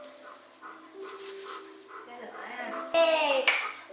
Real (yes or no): yes